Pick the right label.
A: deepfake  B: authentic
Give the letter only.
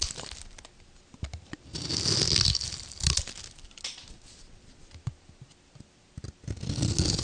B